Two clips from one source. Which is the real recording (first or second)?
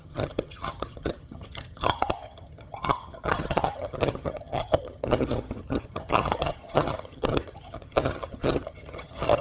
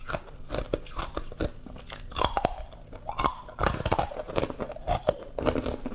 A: second